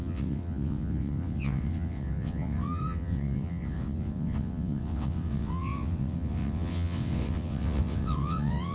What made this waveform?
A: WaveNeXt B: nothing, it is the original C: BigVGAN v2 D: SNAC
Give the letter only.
A